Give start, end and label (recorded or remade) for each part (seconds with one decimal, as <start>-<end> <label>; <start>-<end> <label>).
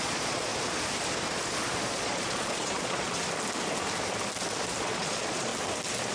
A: 0.0-0.5 remade; 0.5-1.9 recorded; 1.9-3.2 remade; 3.2-4.8 recorded; 4.8-5.5 remade; 5.5-6.1 recorded